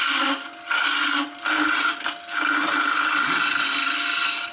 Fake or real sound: real